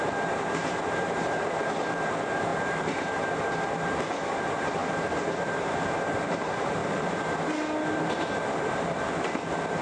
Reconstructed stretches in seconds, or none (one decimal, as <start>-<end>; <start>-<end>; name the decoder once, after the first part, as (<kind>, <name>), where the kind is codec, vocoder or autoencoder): 0.0-6.8 (vocoder, BigVGAN v2); 8.6-9.8